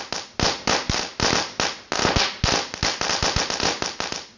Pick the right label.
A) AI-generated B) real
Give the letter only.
B